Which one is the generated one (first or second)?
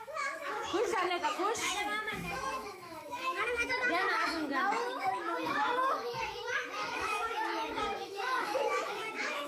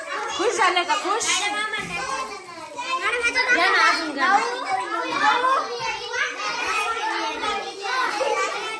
first